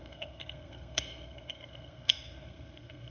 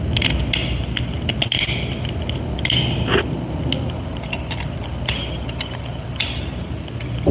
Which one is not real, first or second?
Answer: first